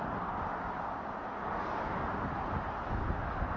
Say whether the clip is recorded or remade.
recorded